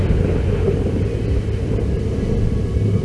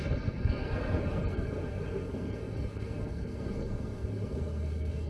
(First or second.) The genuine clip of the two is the first